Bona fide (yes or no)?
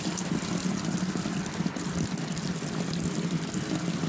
yes